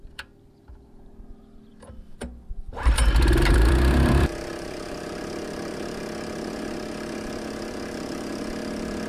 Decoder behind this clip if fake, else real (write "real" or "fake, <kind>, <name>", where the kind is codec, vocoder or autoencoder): fake, vocoder, BigVGAN v2